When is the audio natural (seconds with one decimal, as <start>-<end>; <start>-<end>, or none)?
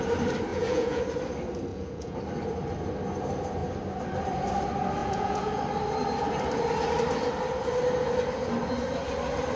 0.0-0.5; 1.0-1.7; 2.2-5.0; 5.6-9.6